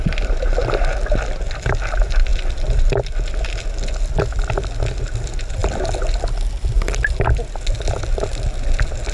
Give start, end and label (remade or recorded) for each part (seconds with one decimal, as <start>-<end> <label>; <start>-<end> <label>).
0.0-9.1 recorded